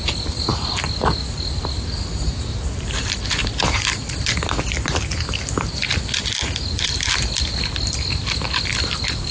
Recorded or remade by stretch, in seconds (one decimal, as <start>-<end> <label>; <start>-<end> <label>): 0.0-9.3 recorded